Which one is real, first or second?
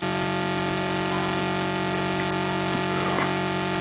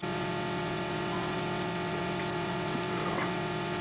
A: first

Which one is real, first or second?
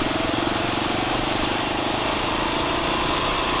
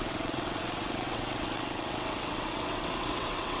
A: first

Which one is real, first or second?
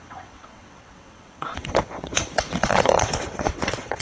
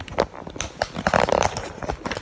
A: second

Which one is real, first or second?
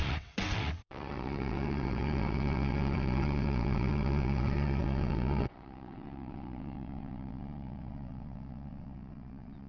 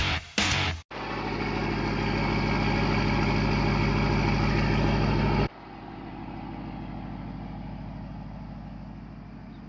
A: second